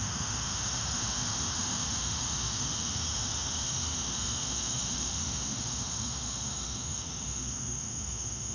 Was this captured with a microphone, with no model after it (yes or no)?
no